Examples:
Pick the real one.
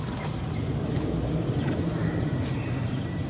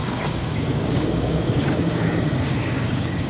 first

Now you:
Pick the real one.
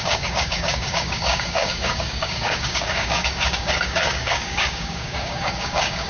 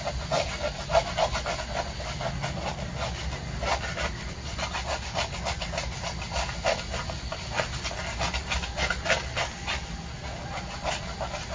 second